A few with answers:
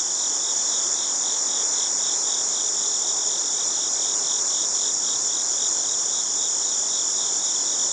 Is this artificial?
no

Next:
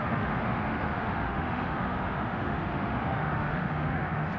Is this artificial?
yes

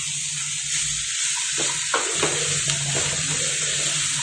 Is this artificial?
no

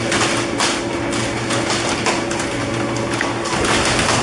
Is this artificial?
no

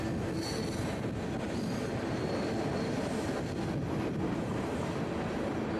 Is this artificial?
no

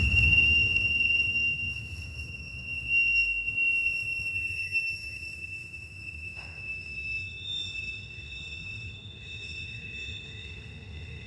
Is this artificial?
yes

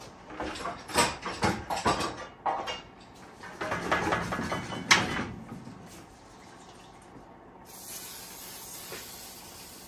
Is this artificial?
no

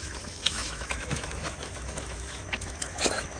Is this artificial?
yes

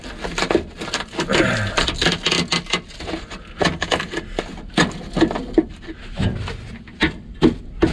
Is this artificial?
no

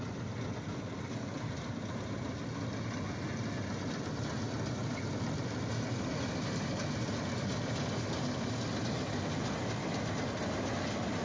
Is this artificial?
no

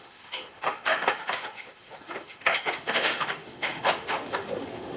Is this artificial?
yes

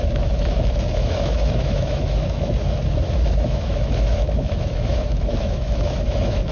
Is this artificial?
yes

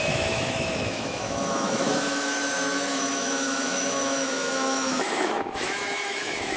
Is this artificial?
yes